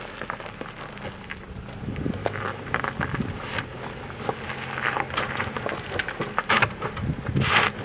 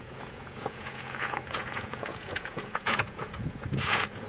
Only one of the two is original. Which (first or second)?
first